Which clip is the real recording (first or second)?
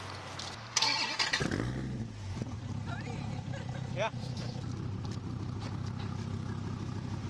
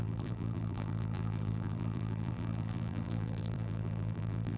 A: first